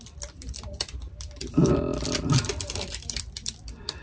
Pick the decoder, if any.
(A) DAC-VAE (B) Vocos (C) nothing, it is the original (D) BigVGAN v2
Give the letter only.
D